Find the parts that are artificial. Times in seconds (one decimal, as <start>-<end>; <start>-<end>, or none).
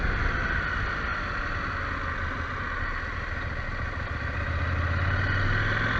none